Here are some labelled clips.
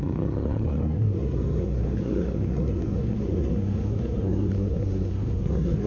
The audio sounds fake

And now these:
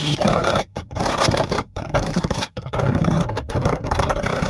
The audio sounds fake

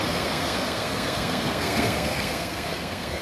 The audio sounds fake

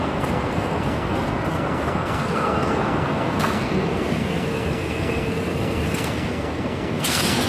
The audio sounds fake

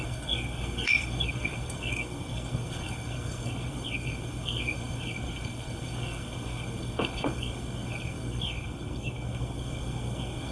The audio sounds fake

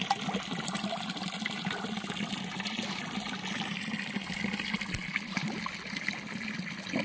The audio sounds real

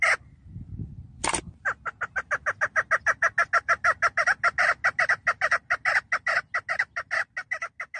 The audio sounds real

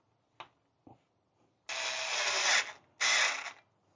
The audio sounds real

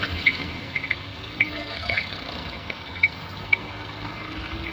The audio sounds fake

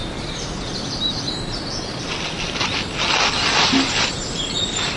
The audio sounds real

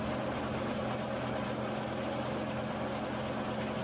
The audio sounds real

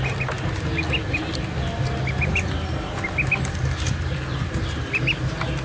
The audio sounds real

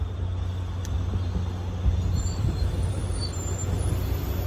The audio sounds real